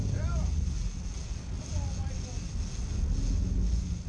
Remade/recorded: recorded